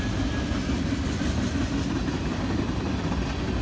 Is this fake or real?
real